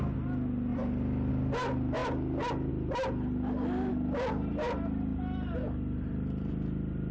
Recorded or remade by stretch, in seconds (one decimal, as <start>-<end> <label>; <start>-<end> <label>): 0.0-0.7 recorded; 0.7-1.3 remade; 1.3-5.1 recorded; 5.1-6.5 remade; 6.5-7.1 recorded